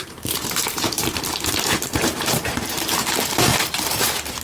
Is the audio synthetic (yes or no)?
yes